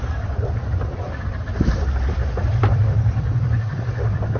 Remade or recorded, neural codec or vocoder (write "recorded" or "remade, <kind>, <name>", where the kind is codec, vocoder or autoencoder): remade, vocoder, BigVGAN v2